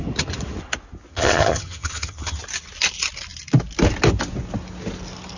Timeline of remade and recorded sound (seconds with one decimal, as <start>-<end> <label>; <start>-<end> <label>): 0.0-1.1 recorded; 1.1-2.4 remade; 2.4-5.4 recorded

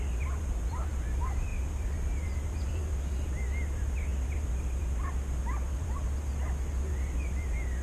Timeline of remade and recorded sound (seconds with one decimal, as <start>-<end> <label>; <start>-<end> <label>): 0.0-7.8 recorded

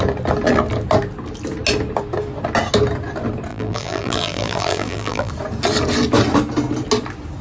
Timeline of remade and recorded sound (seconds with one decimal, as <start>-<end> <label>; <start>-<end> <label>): 0.0-3.5 recorded; 3.5-5.3 remade; 5.3-7.4 recorded

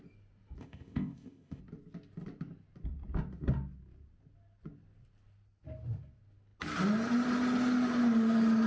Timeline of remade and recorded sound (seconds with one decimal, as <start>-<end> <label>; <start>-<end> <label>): 0.0-0.6 recorded; 0.6-1.6 remade; 1.6-8.7 recorded

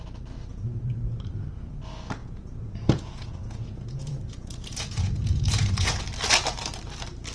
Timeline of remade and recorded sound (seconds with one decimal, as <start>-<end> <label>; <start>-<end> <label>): 0.0-2.2 recorded; 2.2-6.0 remade; 6.0-7.3 recorded

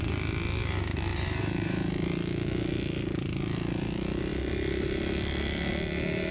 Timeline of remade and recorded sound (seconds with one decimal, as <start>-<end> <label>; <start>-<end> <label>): 0.0-1.1 recorded; 1.1-1.9 remade; 1.9-6.3 recorded